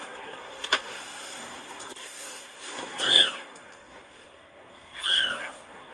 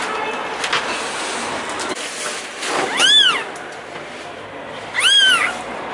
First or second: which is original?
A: second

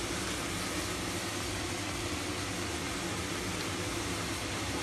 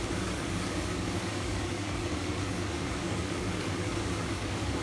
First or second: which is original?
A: first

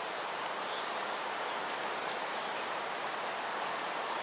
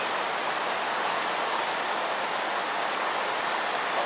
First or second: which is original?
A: second